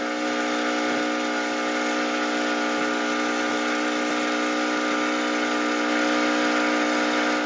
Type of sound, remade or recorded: recorded